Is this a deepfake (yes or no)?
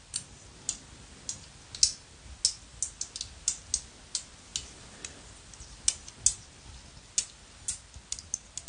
no